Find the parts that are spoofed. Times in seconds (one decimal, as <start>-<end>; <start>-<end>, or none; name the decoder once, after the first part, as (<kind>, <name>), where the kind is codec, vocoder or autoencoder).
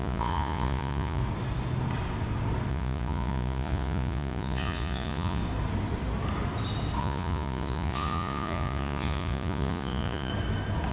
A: 0.0-1.2 (vocoder, Vocos); 2.7-5.4; 7.0-10.3